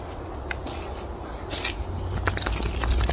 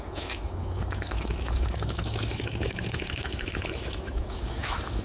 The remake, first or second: second